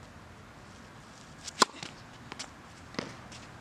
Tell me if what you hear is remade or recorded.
recorded